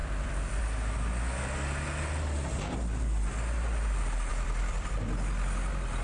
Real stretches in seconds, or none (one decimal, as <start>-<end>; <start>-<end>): 0.6-4.3; 4.9-6.0